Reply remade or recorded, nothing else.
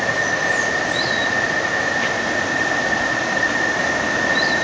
remade